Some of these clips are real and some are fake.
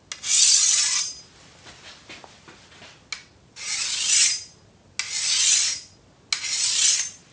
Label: real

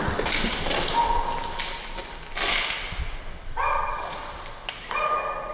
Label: real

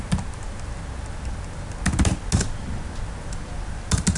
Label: real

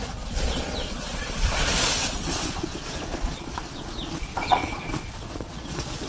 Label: fake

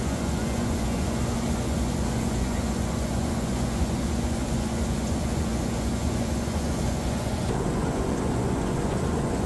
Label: fake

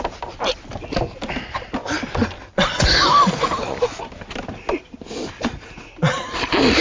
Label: real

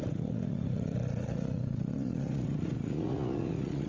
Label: fake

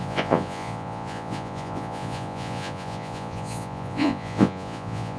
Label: fake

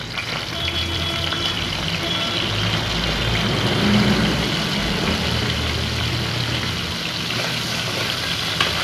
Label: real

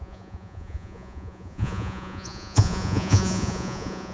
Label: fake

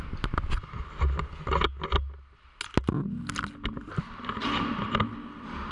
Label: real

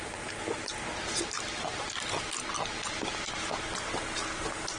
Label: real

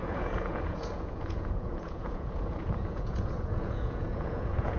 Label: fake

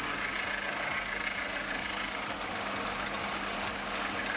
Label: real